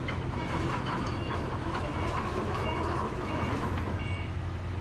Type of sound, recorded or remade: remade